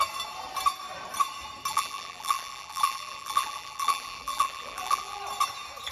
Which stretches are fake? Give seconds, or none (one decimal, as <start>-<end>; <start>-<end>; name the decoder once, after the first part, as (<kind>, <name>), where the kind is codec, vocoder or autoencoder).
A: 1.7-5.2 (vocoder, BigVGAN v2)